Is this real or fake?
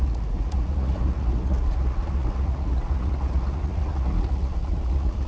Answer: fake